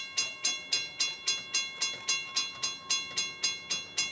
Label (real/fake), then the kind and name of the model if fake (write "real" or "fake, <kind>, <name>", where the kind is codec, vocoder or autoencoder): real